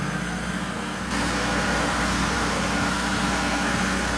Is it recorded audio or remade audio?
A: remade